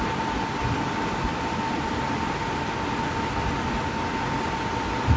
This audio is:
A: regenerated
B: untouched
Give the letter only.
B